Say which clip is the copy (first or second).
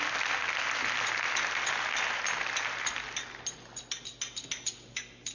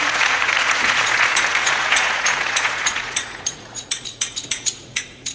second